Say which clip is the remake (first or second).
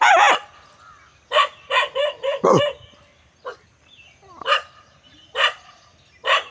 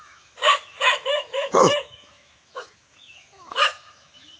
second